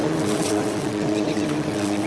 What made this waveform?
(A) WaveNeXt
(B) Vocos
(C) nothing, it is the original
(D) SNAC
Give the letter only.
A